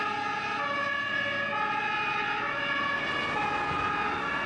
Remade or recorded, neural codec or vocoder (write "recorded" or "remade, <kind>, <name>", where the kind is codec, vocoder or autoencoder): recorded